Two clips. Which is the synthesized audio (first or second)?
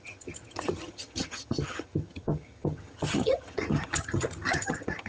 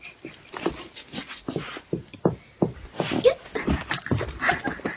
first